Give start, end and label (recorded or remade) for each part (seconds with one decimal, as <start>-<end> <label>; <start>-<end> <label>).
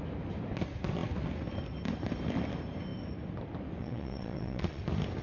0.0-3.8 recorded; 3.8-4.8 remade; 4.8-5.2 recorded